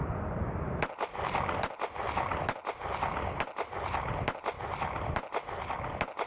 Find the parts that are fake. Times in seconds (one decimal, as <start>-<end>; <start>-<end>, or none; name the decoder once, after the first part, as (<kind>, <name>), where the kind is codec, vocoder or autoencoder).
none